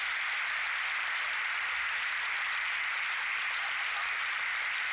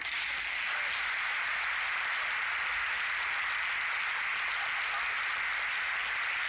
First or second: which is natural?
second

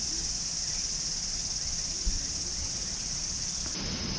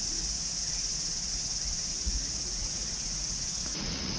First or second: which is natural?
first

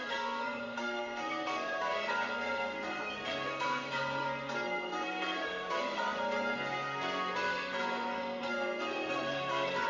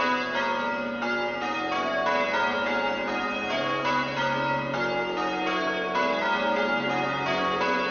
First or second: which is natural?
second